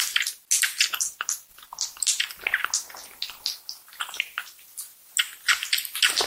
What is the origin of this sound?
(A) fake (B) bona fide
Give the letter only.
B